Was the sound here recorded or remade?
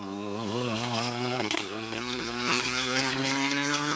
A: remade